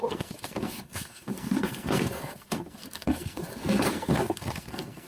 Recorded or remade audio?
remade